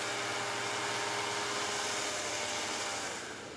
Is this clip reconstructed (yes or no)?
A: no